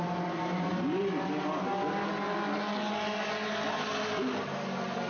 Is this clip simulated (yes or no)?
no